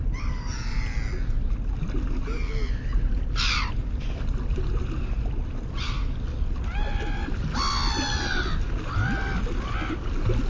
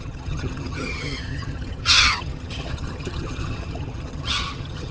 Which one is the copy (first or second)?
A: second